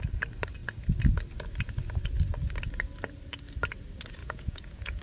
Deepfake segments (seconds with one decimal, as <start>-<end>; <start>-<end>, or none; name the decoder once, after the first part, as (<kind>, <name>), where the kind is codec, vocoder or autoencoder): 4.2-5.0 (vocoder, Vocos)